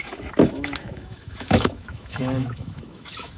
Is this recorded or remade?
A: remade